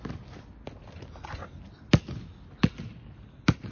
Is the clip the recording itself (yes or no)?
yes